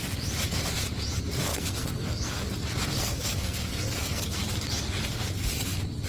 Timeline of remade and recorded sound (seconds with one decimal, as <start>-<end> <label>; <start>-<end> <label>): 0.0-1.5 recorded; 1.5-2.4 remade; 2.4-3.0 recorded; 3.0-4.4 remade; 4.4-6.1 recorded